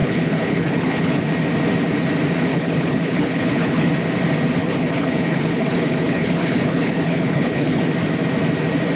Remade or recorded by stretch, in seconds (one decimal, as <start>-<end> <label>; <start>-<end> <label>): 0.0-1.2 remade; 1.2-2.5 recorded; 2.5-3.9 remade; 3.9-4.6 recorded; 4.6-7.8 remade; 7.8-9.0 recorded